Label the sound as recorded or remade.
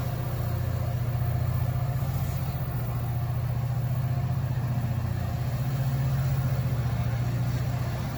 recorded